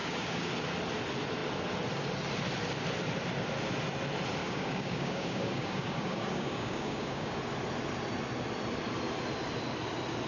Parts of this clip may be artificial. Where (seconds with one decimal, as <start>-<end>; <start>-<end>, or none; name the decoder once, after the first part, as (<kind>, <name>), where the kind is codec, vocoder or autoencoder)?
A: 0.0-0.5 (codec, DAC); 4.4-7.4